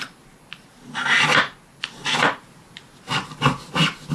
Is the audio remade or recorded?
recorded